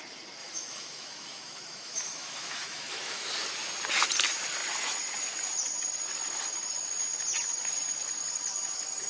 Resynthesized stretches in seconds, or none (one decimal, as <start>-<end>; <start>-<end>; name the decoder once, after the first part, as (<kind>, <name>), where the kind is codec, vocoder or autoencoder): 0.4-3.3 (autoencoder, DAC-VAE)